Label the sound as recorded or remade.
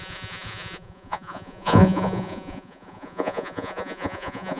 remade